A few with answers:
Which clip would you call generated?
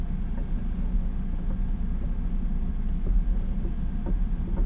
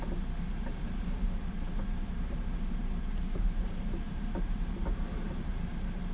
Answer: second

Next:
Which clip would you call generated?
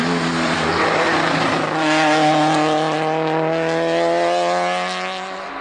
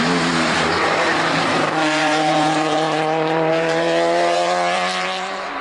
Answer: second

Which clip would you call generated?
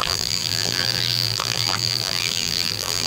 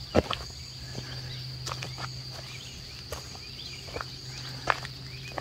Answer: first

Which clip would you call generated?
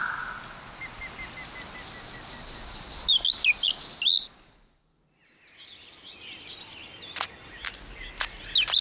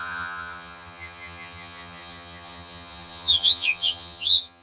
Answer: second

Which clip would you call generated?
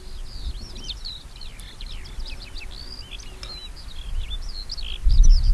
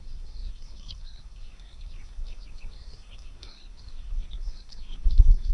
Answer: second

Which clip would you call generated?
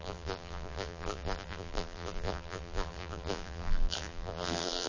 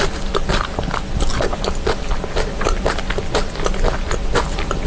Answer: first